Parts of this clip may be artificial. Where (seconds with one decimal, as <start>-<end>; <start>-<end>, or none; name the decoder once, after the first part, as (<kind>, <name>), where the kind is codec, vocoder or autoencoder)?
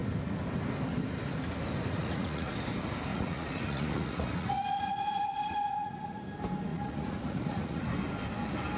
1.9-2.5 (vocoder, Vocos); 3.1-6.2; 6.7-7.9